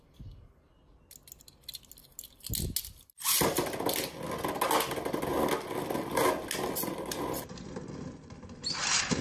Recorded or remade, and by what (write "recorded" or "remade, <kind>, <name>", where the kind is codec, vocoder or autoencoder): recorded